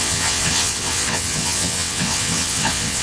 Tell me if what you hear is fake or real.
fake